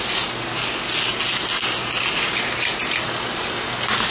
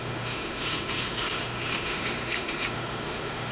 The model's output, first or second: second